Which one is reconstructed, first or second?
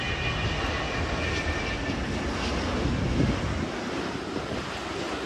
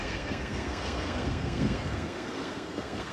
second